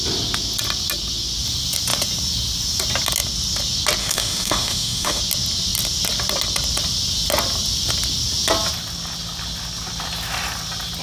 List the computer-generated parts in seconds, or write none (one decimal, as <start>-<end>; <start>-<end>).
4.0-5.2